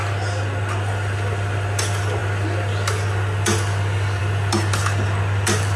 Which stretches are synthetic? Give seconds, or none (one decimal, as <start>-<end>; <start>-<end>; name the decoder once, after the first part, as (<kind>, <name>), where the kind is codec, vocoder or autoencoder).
none